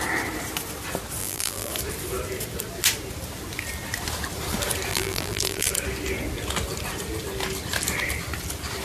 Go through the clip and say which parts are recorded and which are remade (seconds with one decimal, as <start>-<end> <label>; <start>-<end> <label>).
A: 0.0-1.2 recorded; 1.2-1.7 remade; 1.7-4.9 recorded; 4.9-5.7 remade; 5.7-8.8 recorded